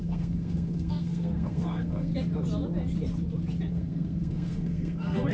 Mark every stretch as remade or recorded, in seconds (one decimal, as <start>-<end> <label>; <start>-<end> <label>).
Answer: 0.0-2.1 remade; 2.1-3.7 recorded; 3.7-5.3 remade